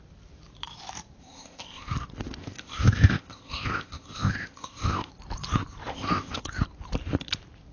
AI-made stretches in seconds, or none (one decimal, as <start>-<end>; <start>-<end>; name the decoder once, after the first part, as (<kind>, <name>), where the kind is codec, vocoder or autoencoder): 1.2-1.9 (codec, ZipCodec); 2.4-5.1; 5.9-6.4